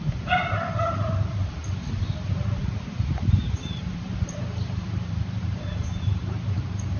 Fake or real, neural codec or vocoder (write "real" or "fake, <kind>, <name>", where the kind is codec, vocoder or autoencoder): fake, vocoder, BigVGAN v2